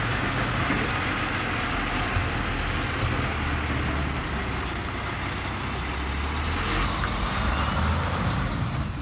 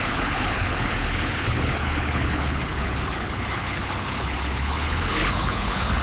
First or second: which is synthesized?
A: second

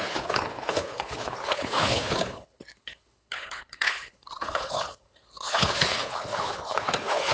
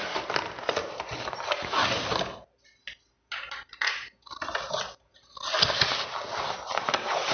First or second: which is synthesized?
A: first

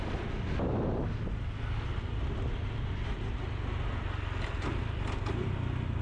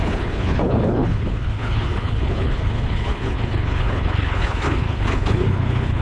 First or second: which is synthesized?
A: second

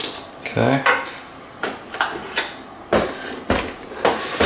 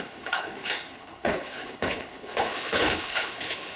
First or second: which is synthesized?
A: second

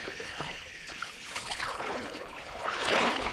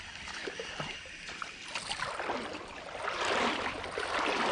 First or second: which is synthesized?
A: first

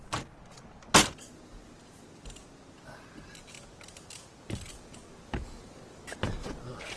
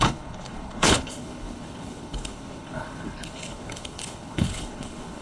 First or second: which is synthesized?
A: second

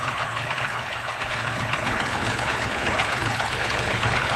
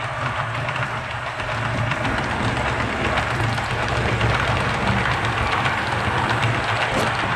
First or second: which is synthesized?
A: first